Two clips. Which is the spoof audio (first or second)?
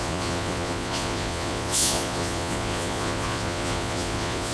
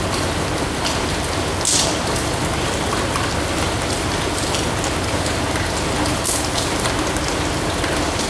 first